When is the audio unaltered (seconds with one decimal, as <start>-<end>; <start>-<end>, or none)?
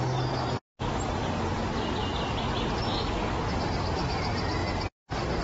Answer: 0.0-4.6